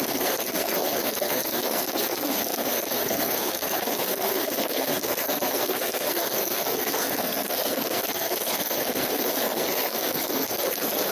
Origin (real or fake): fake